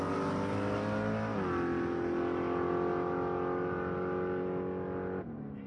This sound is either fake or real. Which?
real